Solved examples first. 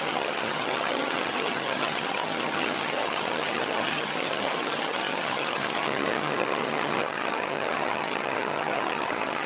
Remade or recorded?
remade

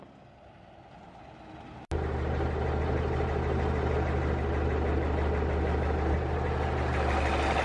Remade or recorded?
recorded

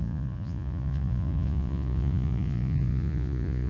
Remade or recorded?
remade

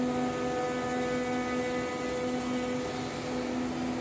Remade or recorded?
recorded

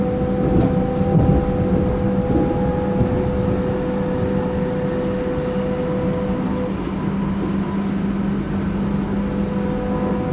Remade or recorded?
recorded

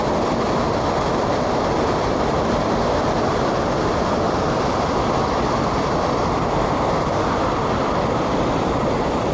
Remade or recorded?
recorded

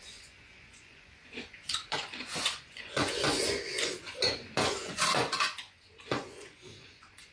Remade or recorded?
remade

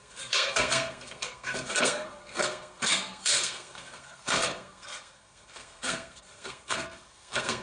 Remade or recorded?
remade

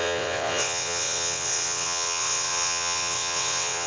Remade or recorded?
remade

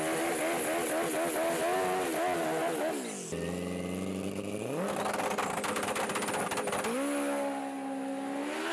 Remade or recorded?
recorded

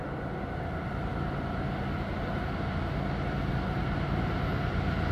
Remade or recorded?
recorded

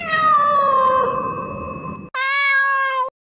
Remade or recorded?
recorded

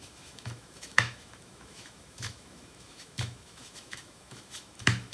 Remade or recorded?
remade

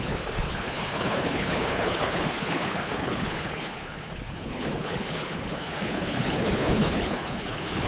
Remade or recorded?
remade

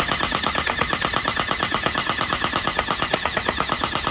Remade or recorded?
recorded